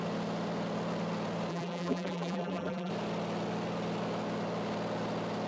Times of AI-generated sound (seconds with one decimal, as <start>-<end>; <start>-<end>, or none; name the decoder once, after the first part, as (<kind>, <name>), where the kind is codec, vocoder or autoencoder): 1.5-2.9 (vocoder, BigVGAN v2)